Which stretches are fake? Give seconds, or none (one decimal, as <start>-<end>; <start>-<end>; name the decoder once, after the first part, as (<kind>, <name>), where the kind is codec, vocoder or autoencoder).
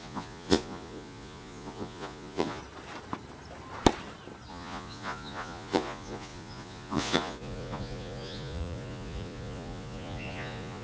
0.0-2.6 (vocoder, Vocos); 4.5-10.8